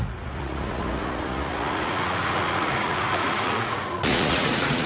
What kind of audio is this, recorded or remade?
remade